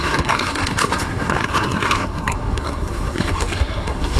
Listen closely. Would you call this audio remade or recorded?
remade